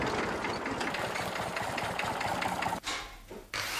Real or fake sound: real